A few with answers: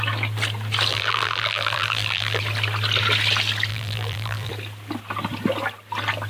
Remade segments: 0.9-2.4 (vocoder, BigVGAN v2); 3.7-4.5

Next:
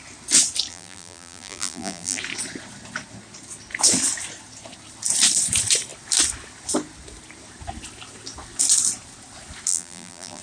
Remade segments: 0.7-2.2 (vocoder, BigVGAN v2); 9.7-10.4

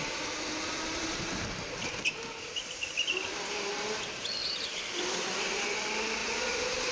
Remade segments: 1.8-2.9 (vocoder, BigVGAN v2); 6.2-6.9

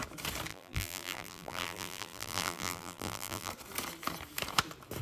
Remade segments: 0.5-3.5 (vocoder, BigVGAN v2)